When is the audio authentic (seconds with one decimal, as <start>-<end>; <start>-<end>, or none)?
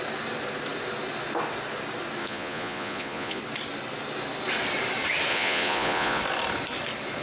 0.0-2.2; 3.4-5.3; 6.2-7.2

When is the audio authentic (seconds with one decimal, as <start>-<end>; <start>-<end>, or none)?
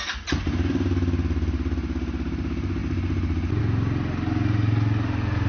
0.0-5.5